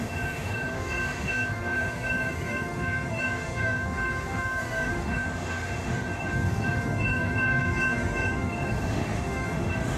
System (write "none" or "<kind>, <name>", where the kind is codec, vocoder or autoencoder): autoencoder, DAC-VAE